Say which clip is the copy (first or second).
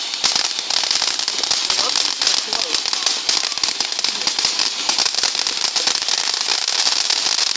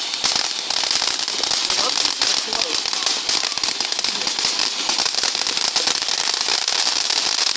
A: second